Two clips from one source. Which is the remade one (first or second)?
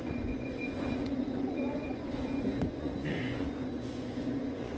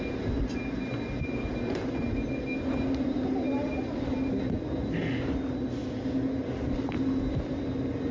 first